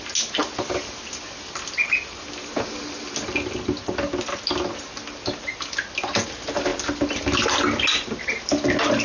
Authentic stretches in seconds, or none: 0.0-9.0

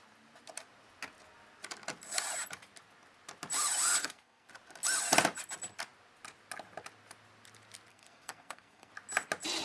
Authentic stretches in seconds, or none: 0.0-4.0; 4.5-7.9; 8.9-9.6